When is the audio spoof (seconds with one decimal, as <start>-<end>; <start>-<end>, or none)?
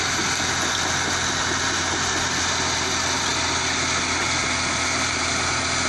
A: none